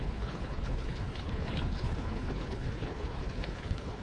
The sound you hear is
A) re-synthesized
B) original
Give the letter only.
A